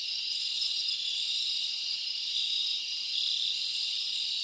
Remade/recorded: recorded